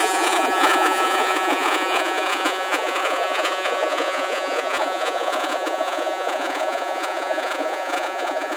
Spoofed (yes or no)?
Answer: yes